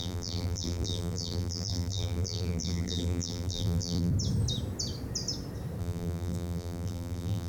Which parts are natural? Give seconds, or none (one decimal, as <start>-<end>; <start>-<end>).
4.1-5.8